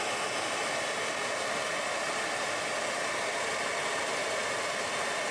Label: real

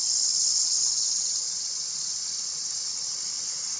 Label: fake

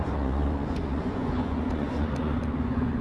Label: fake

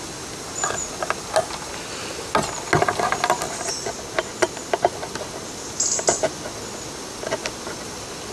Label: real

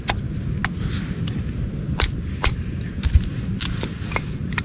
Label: real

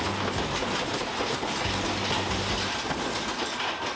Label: real